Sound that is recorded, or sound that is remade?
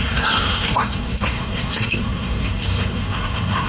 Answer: remade